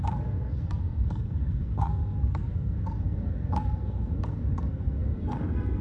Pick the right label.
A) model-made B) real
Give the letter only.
A